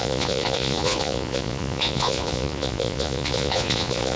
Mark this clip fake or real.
fake